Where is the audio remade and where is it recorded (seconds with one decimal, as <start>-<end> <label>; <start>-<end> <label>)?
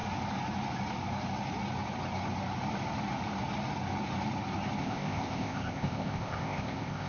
0.0-4.8 recorded; 4.8-7.1 remade